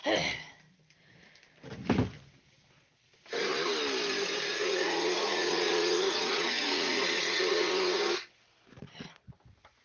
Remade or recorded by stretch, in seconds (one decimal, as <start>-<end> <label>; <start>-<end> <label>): 0.0-4.6 recorded; 4.6-8.0 remade; 8.0-9.8 recorded